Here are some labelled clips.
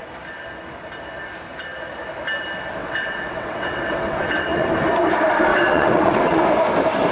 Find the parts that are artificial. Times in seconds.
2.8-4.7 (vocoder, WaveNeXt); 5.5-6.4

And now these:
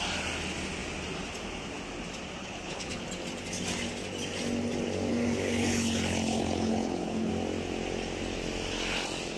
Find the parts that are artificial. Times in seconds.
2.4-3.0 (codec, HILCodec); 5.1-7.3

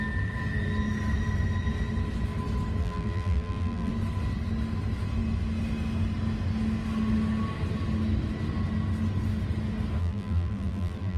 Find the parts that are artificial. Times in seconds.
2.8-3.9 (vocoder, BigVGAN v2); 10.0-11.2

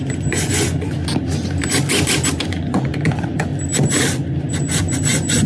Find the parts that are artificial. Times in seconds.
0.0-1.0 (vocoder, Vocos); 2.4-3.5; 4.5-5.5